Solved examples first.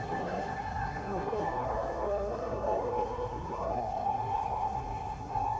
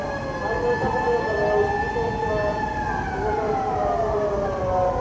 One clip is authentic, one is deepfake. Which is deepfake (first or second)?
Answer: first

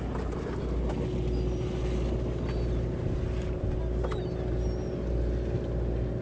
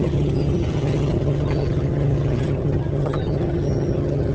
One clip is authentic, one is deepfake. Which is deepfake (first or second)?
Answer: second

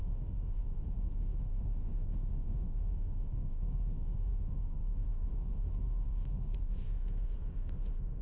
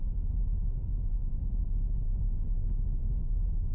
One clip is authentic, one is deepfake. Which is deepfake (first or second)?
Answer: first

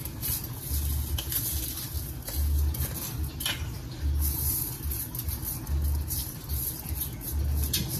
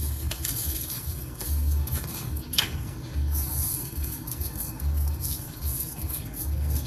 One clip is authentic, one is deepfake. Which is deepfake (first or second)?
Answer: second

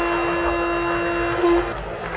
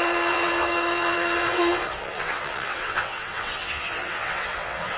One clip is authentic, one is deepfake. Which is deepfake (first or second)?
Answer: second